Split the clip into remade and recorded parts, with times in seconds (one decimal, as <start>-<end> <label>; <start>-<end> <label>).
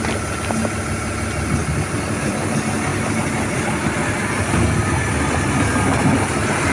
0.0-6.7 recorded